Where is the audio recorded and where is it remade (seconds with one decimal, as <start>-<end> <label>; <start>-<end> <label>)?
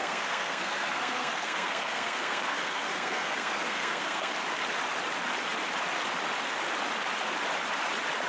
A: 0.0-4.3 remade; 4.3-8.3 recorded